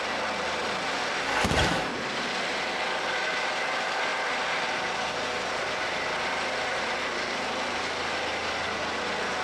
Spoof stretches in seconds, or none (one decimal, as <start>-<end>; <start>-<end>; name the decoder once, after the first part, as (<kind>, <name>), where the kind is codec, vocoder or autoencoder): none